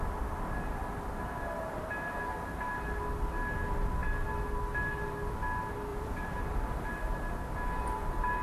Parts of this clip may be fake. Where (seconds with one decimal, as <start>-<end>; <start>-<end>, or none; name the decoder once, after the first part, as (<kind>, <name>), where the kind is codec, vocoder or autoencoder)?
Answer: 5.9-6.4 (vocoder, BigVGAN v2)